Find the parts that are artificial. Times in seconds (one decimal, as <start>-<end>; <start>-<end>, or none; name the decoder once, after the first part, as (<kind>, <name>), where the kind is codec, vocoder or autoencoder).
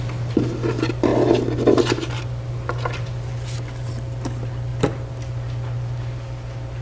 0.0-1.1 (vocoder, BigVGAN v2); 3.0-6.8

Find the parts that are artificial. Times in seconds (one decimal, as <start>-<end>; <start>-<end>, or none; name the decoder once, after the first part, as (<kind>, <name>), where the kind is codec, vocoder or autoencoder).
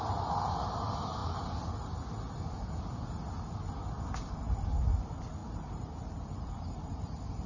5.4-7.0 (vocoder, BigVGAN v2)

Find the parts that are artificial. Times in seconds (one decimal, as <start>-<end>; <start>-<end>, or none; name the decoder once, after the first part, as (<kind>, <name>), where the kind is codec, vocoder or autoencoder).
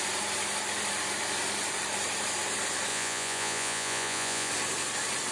2.9-4.5 (vocoder, Vocos)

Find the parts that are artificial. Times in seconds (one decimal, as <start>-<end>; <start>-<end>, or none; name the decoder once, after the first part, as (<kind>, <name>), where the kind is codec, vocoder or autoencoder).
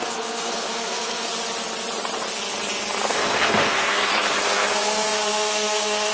0.0-1.3 (codec, SNAC); 3.0-6.1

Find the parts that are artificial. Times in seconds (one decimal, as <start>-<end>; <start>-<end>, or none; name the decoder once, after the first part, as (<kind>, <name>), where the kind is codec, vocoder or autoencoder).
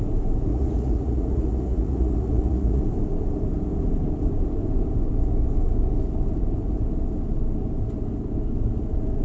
0.5-2.8 (vocoder, Vocos)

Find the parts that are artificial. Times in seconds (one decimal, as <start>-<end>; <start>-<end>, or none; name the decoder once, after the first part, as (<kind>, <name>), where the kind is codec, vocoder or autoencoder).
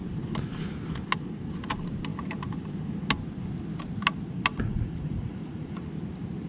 4.5-5.8 (vocoder, Vocos)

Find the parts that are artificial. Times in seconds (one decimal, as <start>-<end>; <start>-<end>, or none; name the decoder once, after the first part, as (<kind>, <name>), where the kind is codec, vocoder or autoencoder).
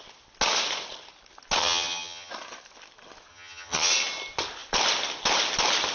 1.6-2.3 (vocoder, HiFi-GAN); 3.3-3.9